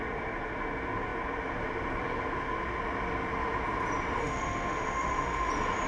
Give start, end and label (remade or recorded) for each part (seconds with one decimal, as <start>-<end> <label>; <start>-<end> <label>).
0.0-4.2 recorded; 4.2-5.5 remade; 5.5-5.9 recorded